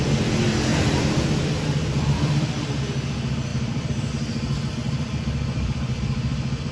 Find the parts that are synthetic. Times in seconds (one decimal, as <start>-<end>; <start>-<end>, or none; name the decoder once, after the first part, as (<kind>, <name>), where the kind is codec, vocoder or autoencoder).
0.7-2.7 (vocoder, BigVGAN v2); 3.5-4.1; 4.8-6.7